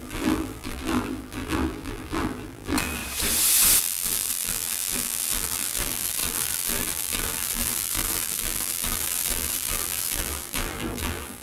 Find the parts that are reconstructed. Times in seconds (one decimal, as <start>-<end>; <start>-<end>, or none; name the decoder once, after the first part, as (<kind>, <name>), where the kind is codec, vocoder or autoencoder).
0.0-3.0 (vocoder, BigVGAN v2); 3.8-11.4